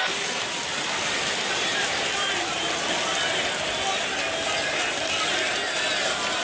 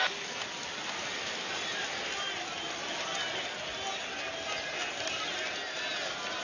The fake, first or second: first